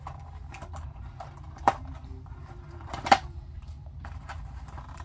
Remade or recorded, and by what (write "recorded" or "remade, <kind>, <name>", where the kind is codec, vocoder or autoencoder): remade, vocoder, BigVGAN v2